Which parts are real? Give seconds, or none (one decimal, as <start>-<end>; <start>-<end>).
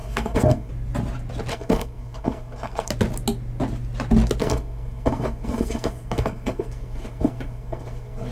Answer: 0.7-1.5; 2.9-4.4